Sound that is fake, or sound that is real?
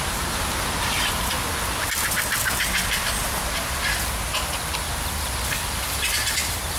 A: real